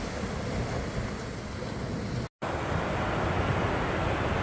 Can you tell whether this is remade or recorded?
recorded